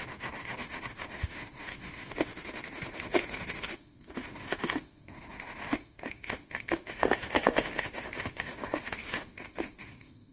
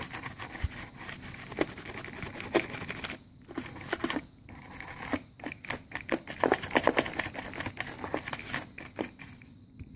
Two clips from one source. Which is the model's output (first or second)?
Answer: first